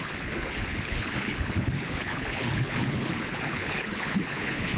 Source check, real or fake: fake